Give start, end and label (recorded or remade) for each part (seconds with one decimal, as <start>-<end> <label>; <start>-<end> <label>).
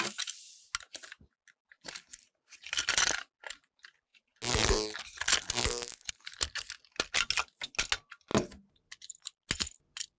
0.0-10.2 recorded